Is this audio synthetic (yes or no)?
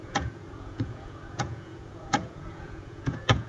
yes